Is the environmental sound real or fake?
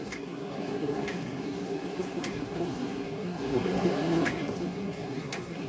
fake